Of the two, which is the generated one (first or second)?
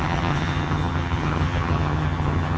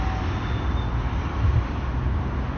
first